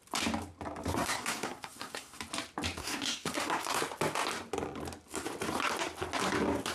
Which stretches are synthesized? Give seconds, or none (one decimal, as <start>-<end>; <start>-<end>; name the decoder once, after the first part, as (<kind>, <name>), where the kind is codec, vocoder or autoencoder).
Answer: 0.9-2.2 (codec, SNAC); 2.8-3.8